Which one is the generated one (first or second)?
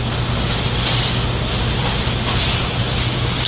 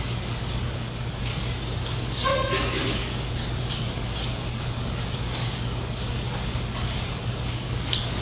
second